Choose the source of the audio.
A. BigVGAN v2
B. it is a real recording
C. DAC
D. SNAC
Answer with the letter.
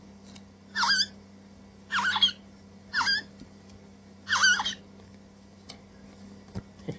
B